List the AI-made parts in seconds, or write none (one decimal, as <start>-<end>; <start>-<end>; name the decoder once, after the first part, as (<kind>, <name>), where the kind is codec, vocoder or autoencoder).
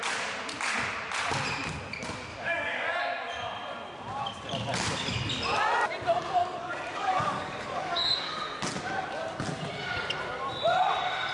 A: 2.3-3.0 (codec, DAC); 6.4-8.4